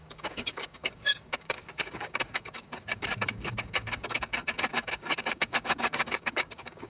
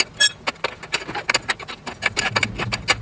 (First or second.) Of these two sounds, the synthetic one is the first